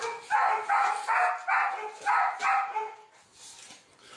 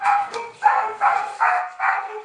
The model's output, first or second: second